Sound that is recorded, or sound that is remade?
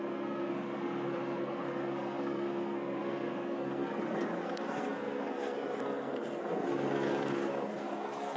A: remade